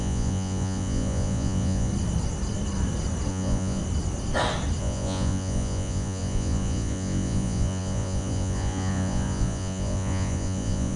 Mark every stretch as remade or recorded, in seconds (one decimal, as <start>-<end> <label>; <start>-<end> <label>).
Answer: 0.0-1.9 remade; 1.9-3.3 recorded; 3.3-3.8 remade; 3.8-4.8 recorded; 4.8-11.0 remade